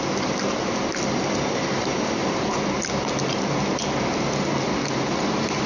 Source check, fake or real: real